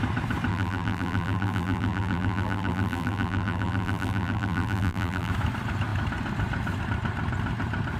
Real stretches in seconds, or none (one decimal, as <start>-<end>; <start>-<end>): 0.0-0.5; 5.3-8.0